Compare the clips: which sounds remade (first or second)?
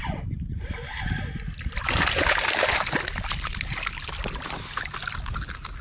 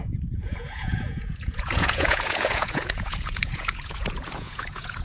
second